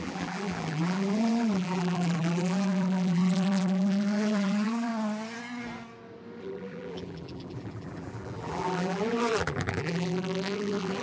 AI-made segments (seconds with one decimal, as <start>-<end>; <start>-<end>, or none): 0.0-4.9; 6.4-11.0